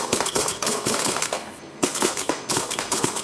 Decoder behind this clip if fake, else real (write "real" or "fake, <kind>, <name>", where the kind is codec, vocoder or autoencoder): fake, codec, SNAC